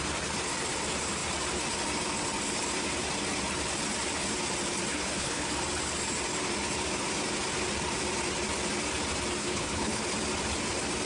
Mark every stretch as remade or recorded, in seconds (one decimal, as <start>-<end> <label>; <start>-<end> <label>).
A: 0.0-4.9 recorded; 4.9-5.5 remade; 5.5-9.4 recorded; 9.4-10.0 remade; 10.0-11.1 recorded